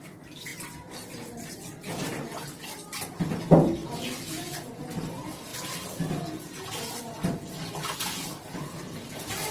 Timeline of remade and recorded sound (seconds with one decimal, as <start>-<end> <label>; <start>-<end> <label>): 0.0-9.5 recorded